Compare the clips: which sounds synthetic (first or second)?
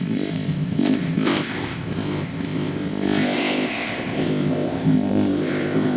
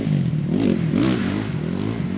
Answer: first